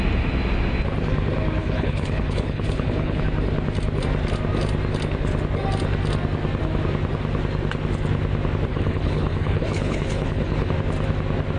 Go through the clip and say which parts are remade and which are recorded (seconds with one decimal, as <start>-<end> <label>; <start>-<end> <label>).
0.0-1.6 recorded; 1.6-3.2 remade; 3.2-8.7 recorded; 8.7-10.7 remade; 10.7-11.6 recorded